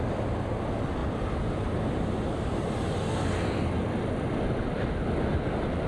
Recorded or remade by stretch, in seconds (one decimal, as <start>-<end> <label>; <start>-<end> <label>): 0.0-5.9 recorded